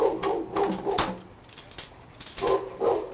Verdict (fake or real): real